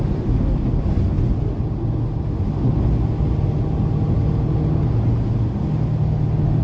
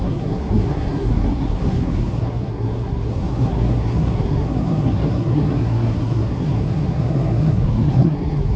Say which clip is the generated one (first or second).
second